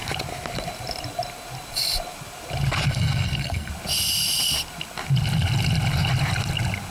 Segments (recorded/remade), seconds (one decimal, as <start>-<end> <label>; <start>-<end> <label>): 0.0-2.9 recorded; 2.9-3.7 remade; 3.7-6.9 recorded